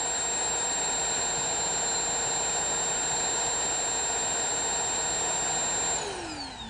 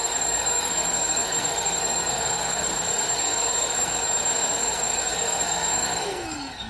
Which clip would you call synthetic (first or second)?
second